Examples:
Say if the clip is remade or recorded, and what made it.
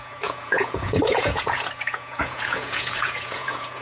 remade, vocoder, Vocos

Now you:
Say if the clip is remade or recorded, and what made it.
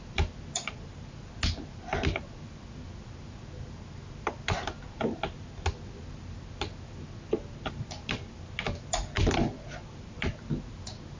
recorded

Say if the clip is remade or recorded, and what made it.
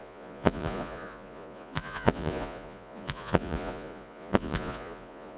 remade, vocoder, Vocos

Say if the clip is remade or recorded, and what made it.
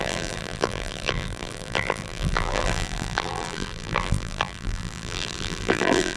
remade, vocoder, BigVGAN v2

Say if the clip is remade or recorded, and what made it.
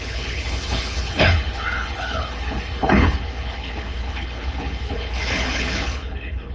remade, codec, HILCodec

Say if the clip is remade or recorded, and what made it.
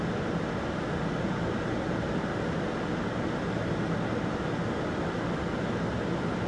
recorded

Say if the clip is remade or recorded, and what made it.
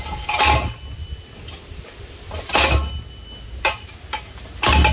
recorded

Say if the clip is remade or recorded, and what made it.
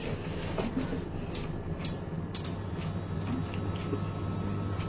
recorded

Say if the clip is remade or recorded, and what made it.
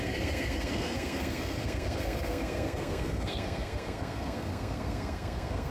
remade, codec, SNAC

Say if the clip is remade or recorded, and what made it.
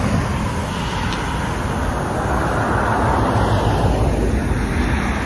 recorded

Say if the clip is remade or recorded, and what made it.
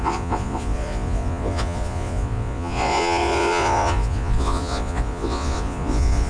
remade, vocoder, Vocos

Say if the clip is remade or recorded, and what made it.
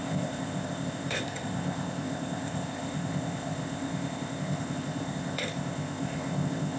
remade, codec, ZipCodec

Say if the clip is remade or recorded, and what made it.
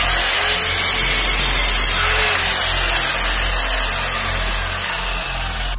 recorded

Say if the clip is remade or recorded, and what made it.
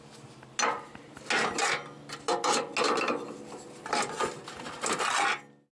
recorded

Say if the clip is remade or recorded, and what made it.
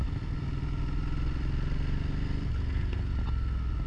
recorded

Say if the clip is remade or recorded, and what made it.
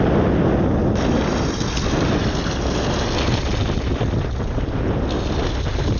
recorded